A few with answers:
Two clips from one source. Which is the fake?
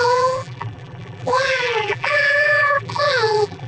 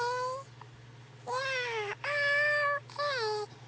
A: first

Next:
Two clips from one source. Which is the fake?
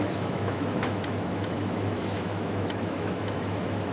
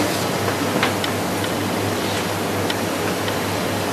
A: first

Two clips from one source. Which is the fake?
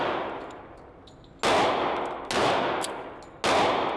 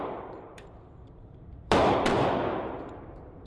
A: second